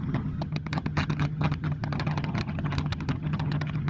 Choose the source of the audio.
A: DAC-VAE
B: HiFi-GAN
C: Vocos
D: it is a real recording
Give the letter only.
B